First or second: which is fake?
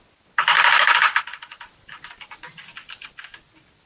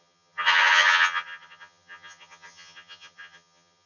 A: second